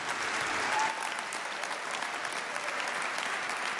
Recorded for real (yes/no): yes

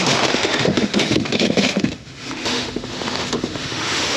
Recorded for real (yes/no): no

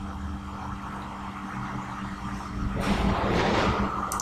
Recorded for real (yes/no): yes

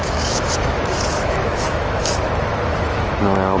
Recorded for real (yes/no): no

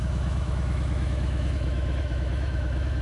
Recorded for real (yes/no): no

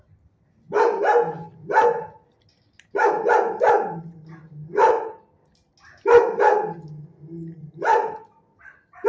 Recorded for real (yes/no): yes